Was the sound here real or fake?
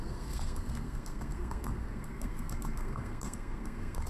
fake